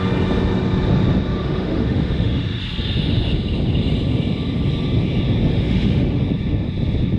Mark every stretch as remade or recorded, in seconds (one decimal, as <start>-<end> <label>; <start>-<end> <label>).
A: 0.0-1.4 recorded; 1.4-2.6 remade; 2.6-5.5 recorded; 5.5-6.2 remade; 6.2-7.2 recorded